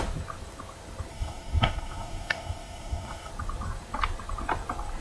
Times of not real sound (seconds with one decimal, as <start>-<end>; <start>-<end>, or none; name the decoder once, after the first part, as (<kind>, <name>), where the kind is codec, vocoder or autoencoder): 1.1-3.3 (codec, DAC)